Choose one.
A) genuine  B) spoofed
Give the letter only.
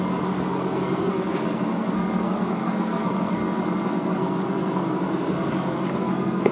B